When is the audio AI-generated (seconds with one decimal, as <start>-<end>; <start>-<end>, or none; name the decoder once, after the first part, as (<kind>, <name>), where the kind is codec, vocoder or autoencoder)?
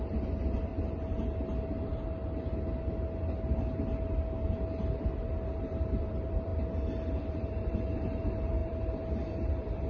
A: 0.0-0.7 (vocoder, BigVGAN v2); 5.6-6.5; 7.2-9.9